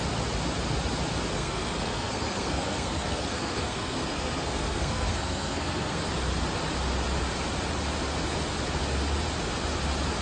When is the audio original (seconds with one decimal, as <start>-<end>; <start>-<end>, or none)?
0.0-1.3; 6.0-10.2